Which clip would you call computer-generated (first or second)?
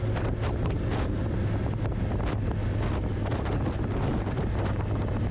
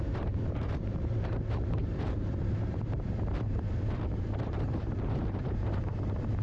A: second